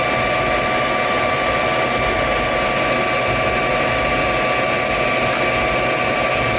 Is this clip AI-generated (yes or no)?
no